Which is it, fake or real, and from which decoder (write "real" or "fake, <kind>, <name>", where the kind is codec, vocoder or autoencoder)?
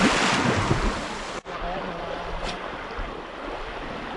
real